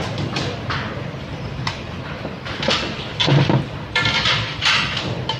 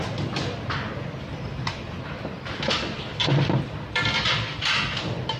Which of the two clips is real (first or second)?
second